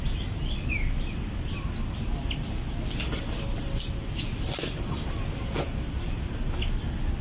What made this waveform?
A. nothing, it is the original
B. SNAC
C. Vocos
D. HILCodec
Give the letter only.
A